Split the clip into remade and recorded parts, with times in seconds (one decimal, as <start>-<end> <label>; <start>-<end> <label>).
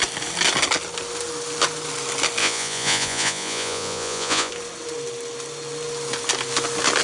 0.0-2.4 recorded; 2.4-4.5 remade; 4.5-7.0 recorded